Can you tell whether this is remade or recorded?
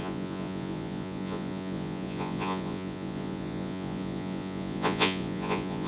remade